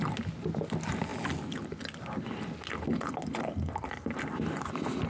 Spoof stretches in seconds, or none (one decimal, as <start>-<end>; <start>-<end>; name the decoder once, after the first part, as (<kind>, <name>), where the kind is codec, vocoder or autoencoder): none